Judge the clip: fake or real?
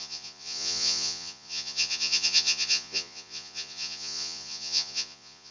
fake